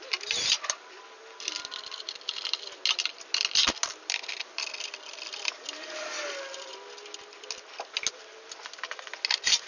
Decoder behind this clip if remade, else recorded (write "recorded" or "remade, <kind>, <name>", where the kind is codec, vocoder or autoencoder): recorded